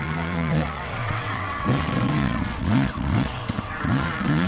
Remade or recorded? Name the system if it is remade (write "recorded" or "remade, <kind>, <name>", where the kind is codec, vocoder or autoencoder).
remade, vocoder, WaveNeXt